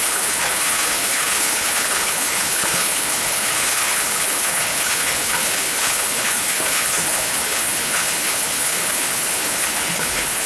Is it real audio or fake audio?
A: fake